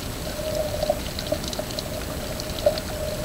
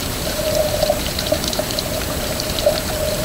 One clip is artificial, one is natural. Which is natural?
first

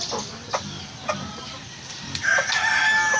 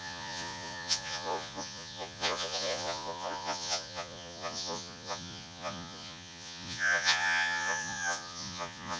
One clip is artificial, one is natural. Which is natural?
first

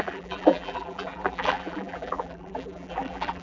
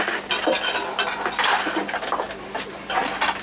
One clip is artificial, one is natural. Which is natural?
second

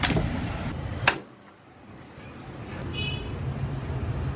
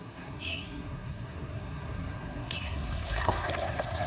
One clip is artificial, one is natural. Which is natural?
first